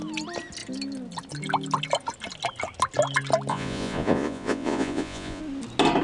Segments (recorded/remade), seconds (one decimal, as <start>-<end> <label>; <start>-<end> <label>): 0.0-3.5 recorded; 3.5-5.4 remade; 5.4-6.0 recorded